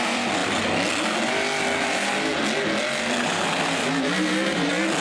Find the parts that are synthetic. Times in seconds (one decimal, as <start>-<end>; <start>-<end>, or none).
0.0-0.4; 2.8-5.0